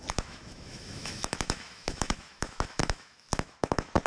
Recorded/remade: remade